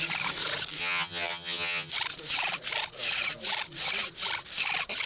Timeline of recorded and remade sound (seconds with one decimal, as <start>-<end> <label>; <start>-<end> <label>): 0.0-0.8 recorded; 0.8-1.9 remade; 1.9-5.1 recorded